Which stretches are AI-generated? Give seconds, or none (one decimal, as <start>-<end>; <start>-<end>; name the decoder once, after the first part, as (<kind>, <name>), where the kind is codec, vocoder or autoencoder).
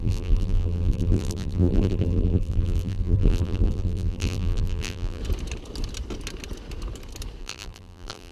0.0-5.2 (vocoder, BigVGAN v2); 7.4-8.3